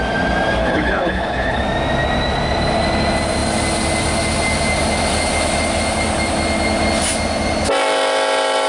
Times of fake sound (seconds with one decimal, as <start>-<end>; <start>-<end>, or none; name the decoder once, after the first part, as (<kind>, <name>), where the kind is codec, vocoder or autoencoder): 0.6-1.6 (codec, HILCodec)